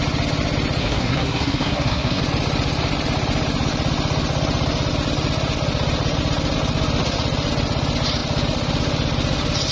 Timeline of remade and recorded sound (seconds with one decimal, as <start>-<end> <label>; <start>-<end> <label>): 0.0-0.8 recorded; 0.8-2.2 remade; 2.2-9.7 recorded